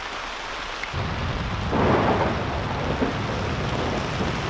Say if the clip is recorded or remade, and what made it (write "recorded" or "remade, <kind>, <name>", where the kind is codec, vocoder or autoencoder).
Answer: recorded